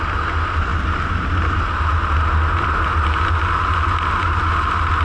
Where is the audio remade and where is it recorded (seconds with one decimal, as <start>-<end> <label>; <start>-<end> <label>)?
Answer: 0.0-5.0 recorded